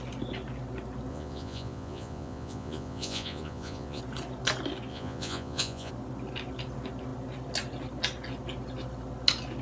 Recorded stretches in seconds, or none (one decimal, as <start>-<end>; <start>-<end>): 0.0-1.1; 4.0-4.9; 5.9-9.6